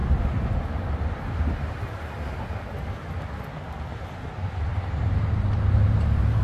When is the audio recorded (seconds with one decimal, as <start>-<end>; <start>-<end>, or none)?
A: 0.0-4.7